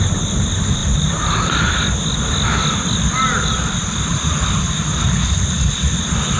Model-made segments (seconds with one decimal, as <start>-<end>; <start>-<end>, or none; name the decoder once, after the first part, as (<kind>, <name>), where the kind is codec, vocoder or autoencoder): none